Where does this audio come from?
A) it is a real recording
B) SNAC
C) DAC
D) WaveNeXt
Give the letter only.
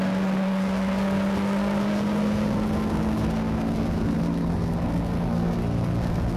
B